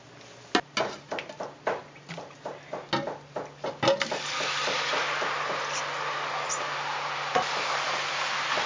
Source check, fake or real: real